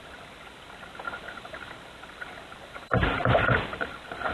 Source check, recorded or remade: recorded